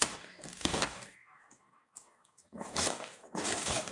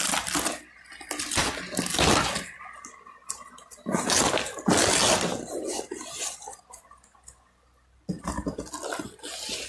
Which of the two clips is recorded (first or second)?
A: second